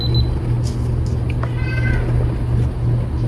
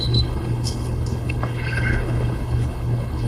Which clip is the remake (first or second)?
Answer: second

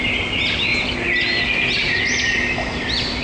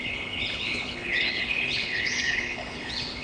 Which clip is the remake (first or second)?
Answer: second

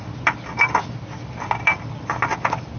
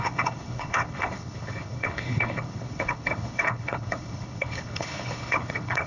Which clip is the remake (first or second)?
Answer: second